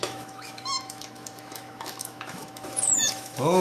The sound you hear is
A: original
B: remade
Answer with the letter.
B